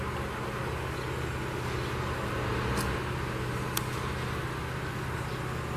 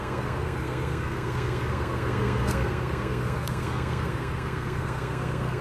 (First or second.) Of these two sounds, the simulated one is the second